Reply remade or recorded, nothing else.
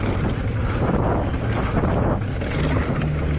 recorded